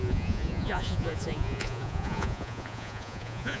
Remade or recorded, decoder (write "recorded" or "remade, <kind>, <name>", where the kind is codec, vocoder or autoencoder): remade, vocoder, Vocos